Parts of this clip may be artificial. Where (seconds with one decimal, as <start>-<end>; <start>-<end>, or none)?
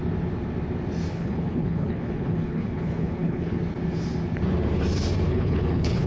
1.1-3.6; 5.3-6.1